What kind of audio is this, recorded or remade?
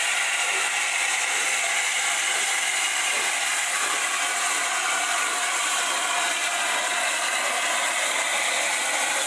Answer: recorded